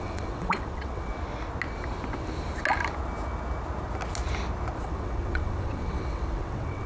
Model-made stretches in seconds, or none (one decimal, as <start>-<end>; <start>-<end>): 0.0-1.1; 4.8-6.9